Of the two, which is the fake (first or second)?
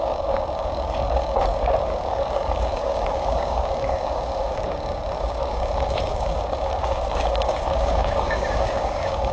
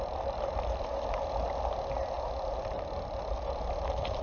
first